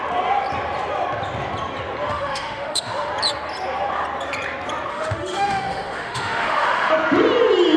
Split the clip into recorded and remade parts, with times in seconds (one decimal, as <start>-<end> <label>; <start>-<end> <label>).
0.0-2.1 recorded; 2.1-3.1 remade; 3.1-4.9 recorded; 4.9-6.9 remade; 6.9-7.8 recorded